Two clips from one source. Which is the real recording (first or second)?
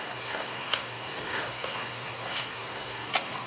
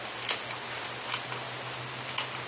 second